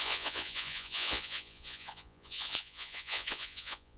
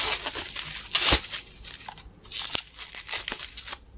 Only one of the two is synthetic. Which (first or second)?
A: first